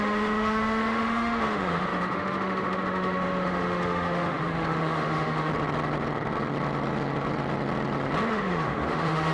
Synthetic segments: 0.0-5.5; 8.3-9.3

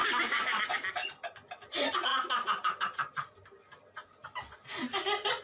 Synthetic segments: 0.0-0.6

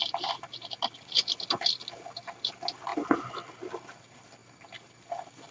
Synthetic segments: 2.9-3.6; 4.4-4.9

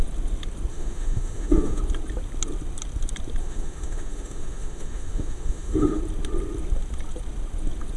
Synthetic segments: 0.7-1.8; 3.4-6.0